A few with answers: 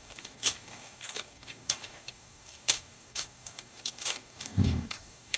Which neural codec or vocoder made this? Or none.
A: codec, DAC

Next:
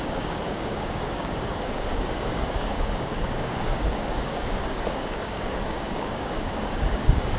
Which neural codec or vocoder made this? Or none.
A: codec, DAC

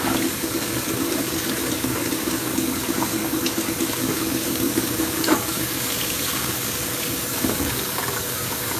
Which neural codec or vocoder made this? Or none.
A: codec, DAC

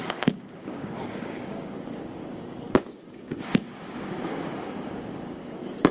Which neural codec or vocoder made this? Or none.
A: codec, DAC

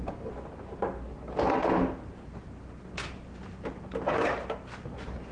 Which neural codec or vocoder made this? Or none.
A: none